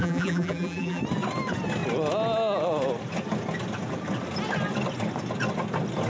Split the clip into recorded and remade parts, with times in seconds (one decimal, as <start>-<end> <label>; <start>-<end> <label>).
0.0-1.0 remade; 1.0-6.1 recorded